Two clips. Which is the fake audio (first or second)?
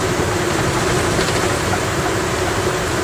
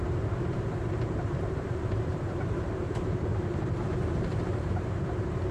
second